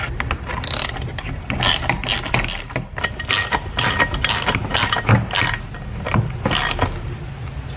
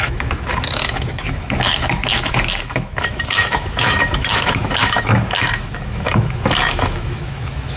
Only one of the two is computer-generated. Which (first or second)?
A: second